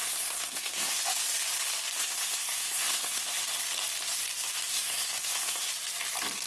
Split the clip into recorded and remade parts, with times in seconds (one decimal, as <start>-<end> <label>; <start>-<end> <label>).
0.0-1.0 remade; 1.0-2.0 recorded; 2.0-3.4 remade; 3.4-4.7 recorded; 4.7-5.7 remade; 5.7-6.5 recorded